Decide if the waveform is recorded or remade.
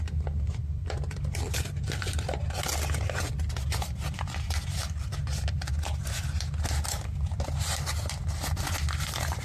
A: recorded